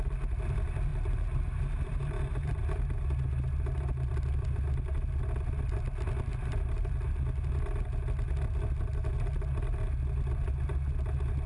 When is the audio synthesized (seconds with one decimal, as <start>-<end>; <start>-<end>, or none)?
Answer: 0.9-3.0; 6.3-6.9